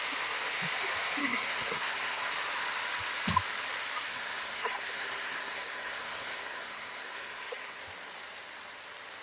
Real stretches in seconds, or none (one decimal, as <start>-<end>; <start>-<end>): 0.0-1.2; 2.3-4.1; 7.8-9.2

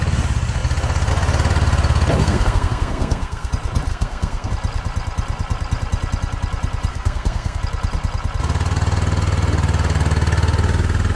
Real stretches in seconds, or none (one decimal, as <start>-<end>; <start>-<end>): 0.0-2.2; 3.5-3.9; 4.5-6.9; 7.6-11.2

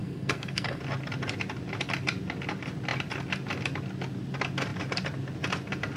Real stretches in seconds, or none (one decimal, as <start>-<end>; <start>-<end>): 0.8-6.0

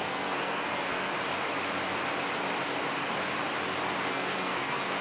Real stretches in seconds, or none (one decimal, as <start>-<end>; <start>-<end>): 1.1-4.1

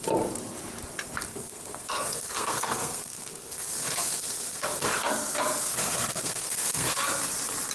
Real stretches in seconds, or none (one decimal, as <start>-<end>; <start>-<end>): 0.0-1.3; 5.1-5.7; 7.0-7.7

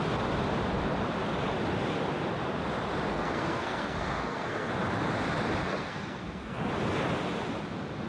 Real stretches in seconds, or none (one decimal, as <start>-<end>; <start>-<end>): 0.0-3.1; 4.7-5.6; 6.7-8.1

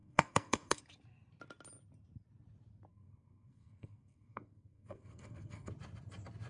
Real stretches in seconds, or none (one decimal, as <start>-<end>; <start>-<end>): 0.8-2.9; 5.7-6.5

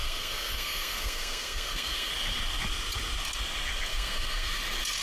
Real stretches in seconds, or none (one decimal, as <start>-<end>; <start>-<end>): 2.1-3.9; 4.6-5.0